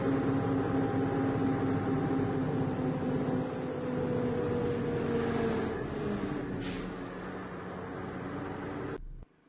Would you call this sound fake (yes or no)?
no